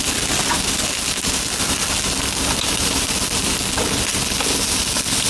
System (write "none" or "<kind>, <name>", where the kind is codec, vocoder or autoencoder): none